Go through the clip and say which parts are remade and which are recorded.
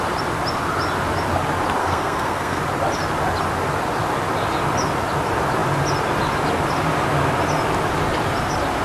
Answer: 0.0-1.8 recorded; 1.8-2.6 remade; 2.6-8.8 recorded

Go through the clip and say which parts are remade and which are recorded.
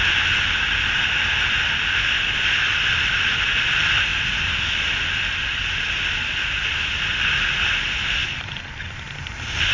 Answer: 0.0-9.7 recorded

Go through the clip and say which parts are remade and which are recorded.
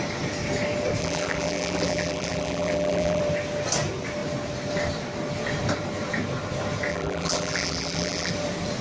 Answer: 0.0-1.0 recorded; 1.0-3.2 remade; 3.2-6.9 recorded; 6.9-8.3 remade; 8.3-8.8 recorded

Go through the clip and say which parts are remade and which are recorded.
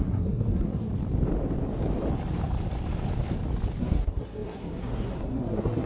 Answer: 0.0-0.9 remade; 0.9-3.8 recorded; 3.8-5.9 remade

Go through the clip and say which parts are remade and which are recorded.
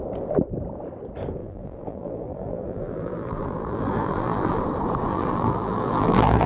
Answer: 0.0-1.4 recorded; 1.4-4.6 remade; 4.6-5.1 recorded; 5.1-6.5 remade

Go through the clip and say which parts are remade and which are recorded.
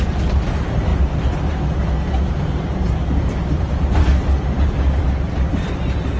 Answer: 0.0-3.0 recorded; 3.0-6.2 remade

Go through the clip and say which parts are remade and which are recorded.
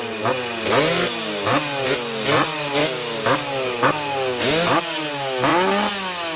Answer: 0.0-2.8 recorded; 2.8-4.8 remade; 4.8-6.4 recorded